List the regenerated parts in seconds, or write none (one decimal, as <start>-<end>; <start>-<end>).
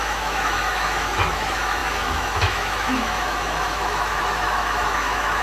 0.0-5.4